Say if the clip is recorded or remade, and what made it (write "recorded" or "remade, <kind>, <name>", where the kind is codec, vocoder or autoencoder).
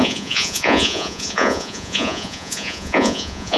remade, vocoder, Vocos